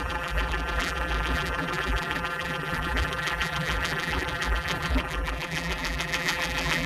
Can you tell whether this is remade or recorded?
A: remade